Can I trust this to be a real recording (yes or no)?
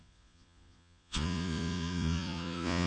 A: no